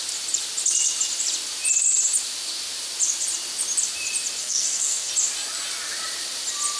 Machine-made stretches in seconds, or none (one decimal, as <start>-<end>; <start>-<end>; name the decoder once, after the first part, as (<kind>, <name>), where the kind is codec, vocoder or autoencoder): 4.4-5.1 (codec, SNAC)